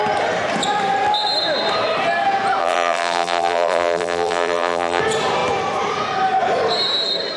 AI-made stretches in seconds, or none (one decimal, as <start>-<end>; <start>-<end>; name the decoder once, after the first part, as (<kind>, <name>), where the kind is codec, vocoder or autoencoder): 2.6-5.0 (vocoder, BigVGAN v2)